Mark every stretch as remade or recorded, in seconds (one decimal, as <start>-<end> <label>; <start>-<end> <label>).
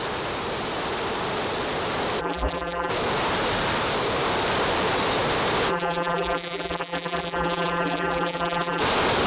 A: 0.0-2.2 recorded; 2.2-2.9 remade; 2.9-5.7 recorded; 5.7-8.8 remade; 8.8-9.3 recorded